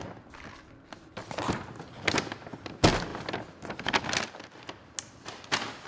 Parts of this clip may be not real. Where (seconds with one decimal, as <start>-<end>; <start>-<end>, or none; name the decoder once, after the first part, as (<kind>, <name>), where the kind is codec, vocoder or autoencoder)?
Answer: none